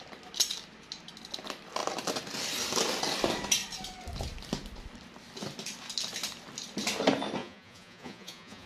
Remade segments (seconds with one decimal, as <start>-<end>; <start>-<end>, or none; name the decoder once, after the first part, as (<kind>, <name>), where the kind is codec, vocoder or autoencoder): 7.4-8.7 (vocoder, Vocos)